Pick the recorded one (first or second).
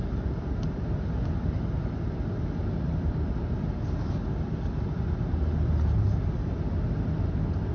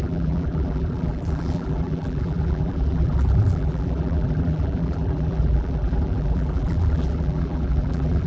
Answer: first